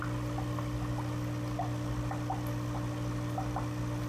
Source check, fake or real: real